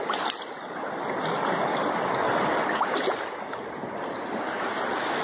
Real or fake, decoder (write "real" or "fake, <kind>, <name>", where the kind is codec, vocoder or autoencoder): real